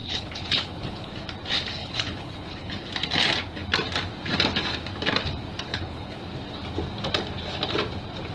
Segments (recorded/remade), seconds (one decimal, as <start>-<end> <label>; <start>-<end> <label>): 0.0-1.1 remade; 1.1-1.8 recorded; 1.8-2.9 remade; 2.9-5.7 recorded; 5.7-6.2 remade; 6.2-8.3 recorded